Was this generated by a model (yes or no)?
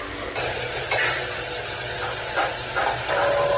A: no